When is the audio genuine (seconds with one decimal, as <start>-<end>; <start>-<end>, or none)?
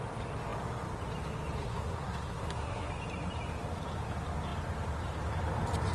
0.0-1.6; 2.9-5.9